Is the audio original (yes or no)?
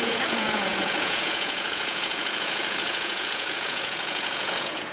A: no